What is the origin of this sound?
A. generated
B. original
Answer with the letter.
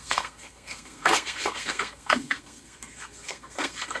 A